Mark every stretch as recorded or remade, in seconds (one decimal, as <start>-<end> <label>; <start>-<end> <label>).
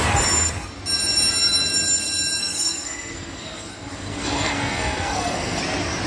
0.0-2.4 recorded; 2.4-5.6 remade; 5.6-6.1 recorded